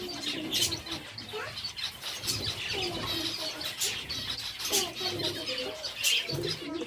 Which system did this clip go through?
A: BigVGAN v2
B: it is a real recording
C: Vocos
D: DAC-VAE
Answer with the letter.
B